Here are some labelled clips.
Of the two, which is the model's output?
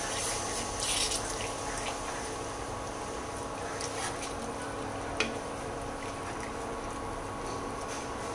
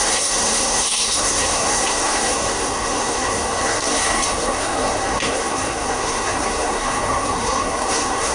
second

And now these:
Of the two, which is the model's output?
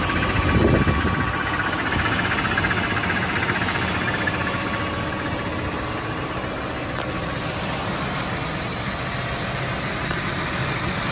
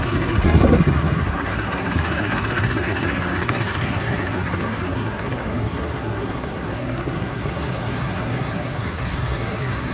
second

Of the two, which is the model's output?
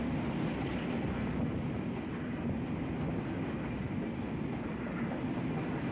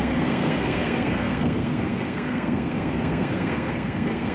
second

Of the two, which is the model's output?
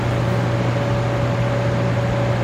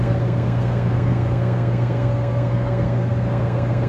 second